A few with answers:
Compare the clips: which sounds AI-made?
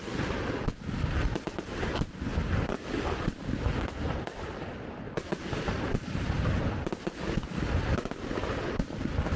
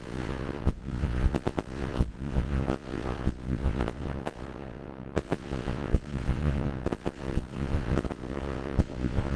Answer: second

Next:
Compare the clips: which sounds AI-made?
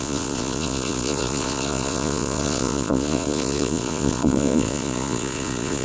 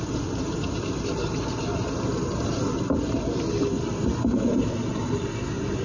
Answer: first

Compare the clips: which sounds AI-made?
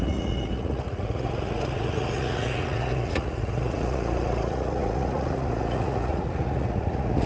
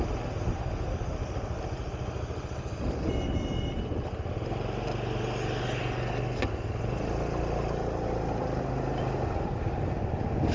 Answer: first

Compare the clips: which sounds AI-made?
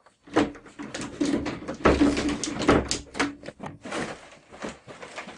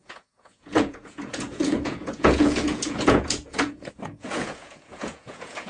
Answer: second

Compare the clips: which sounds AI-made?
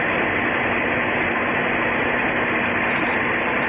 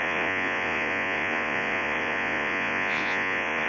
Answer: second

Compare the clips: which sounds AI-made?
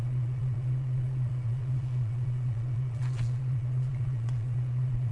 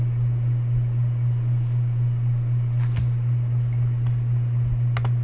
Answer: first